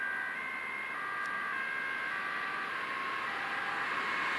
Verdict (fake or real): real